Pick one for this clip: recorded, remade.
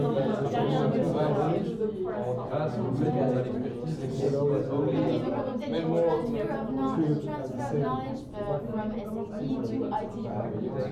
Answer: recorded